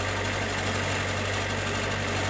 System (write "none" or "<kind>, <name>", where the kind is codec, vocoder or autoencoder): none